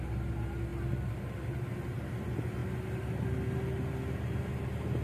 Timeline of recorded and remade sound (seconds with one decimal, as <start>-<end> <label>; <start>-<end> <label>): 0.0-5.0 recorded